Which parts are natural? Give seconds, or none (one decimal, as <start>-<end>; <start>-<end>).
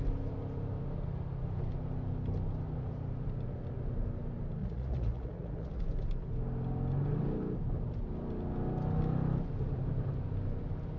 0.0-4.6; 5.8-11.0